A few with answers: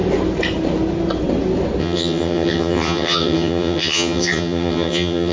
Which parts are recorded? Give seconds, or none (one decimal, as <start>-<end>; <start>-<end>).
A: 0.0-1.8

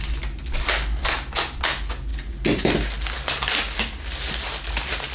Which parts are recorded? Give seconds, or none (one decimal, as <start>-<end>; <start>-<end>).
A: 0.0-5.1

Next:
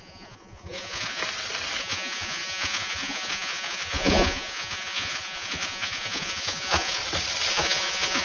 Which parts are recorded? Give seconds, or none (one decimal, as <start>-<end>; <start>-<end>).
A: 1.2-1.8; 7.0-7.5

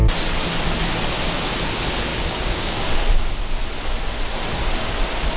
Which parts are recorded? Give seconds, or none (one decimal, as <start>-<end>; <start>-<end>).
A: 0.0-2.1; 2.8-5.4

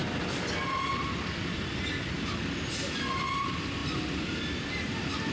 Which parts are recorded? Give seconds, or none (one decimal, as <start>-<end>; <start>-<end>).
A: 0.0-5.3

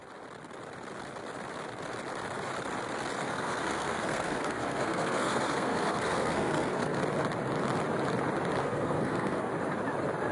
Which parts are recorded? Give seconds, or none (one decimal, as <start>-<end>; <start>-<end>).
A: 0.0-3.2; 7.0-8.6; 9.5-10.3